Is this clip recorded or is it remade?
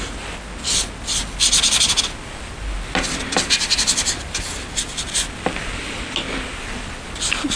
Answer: recorded